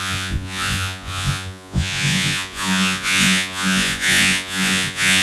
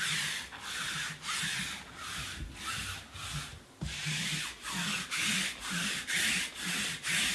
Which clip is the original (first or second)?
second